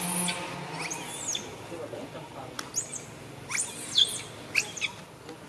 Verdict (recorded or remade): recorded